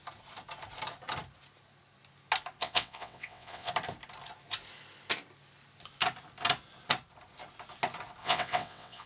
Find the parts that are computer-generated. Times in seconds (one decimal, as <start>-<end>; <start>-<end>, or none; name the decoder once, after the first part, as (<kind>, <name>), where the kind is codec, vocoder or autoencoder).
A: 2.6-3.7 (vocoder, WaveNeXt); 8.2-9.1